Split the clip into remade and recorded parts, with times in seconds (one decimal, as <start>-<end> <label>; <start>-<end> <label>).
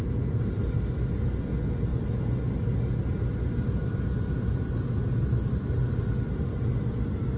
0.0-7.4 recorded